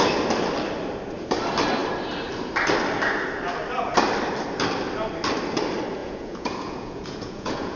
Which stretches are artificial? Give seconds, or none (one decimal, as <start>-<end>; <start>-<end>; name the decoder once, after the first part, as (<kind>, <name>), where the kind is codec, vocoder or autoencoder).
6.0-7.8 (vocoder, Vocos)